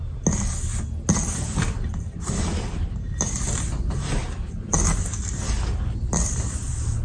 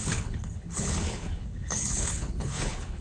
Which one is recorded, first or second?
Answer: first